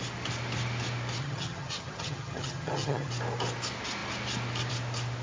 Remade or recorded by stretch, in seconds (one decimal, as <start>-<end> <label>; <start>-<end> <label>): 0.0-1.2 recorded; 1.2-3.1 remade; 3.1-5.2 recorded